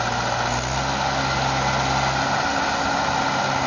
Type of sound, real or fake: real